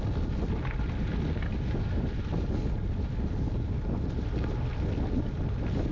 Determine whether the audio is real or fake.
real